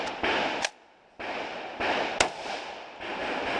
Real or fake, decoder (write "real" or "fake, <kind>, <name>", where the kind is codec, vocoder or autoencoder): real